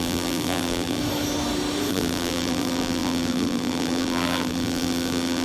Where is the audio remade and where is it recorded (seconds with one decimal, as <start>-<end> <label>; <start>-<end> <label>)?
0.0-1.0 remade; 1.0-1.9 recorded; 1.9-5.4 remade